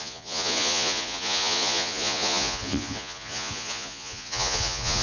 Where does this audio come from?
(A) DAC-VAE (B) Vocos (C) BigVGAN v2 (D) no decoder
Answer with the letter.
B